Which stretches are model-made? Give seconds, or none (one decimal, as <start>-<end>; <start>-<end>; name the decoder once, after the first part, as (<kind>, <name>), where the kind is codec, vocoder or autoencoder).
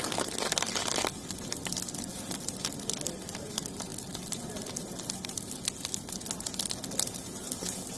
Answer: none